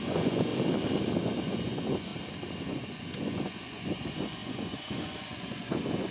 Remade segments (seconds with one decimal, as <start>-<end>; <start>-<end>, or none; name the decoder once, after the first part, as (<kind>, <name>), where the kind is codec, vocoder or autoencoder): 0.0-0.5 (vocoder, Vocos); 1.2-2.1; 2.6-6.1